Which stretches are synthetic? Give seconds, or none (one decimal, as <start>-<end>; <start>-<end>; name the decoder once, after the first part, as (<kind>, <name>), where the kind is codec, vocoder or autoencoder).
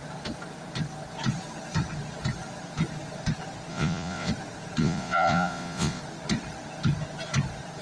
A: 3.7-4.3 (vocoder, Vocos); 4.8-6.0